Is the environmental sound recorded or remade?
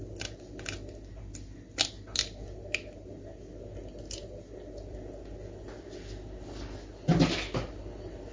recorded